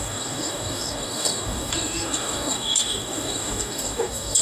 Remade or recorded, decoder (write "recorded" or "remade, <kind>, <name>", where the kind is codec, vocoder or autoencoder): remade, codec, DAC